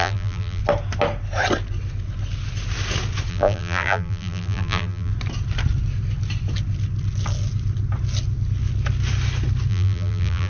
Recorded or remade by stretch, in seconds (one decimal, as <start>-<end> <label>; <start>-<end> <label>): 0.0-0.6 remade; 0.6-3.3 recorded; 3.3-5.1 remade; 5.1-9.7 recorded; 9.7-10.5 remade